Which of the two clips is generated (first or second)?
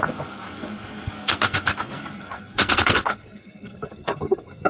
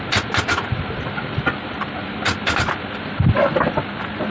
first